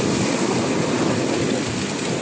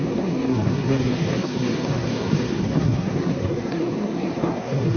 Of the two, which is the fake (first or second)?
second